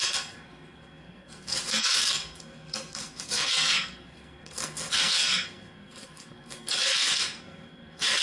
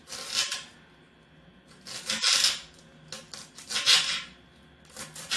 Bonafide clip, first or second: second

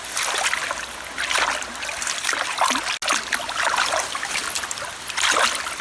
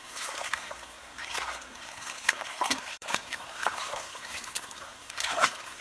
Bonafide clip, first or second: first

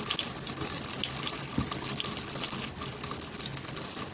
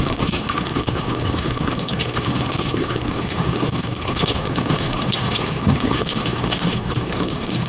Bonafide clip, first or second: first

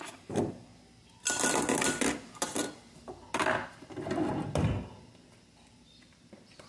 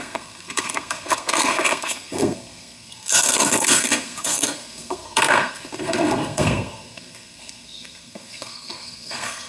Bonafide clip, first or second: first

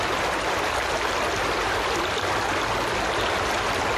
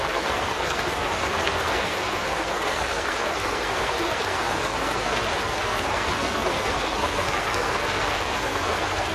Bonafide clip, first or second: first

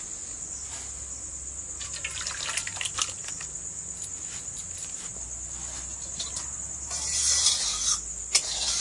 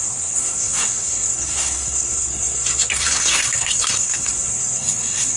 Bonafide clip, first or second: first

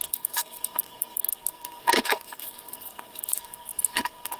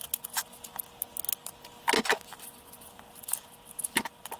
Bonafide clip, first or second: second